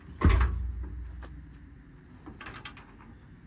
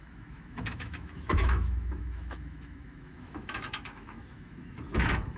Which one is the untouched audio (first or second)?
first